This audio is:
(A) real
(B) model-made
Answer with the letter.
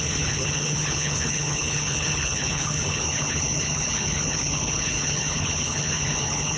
B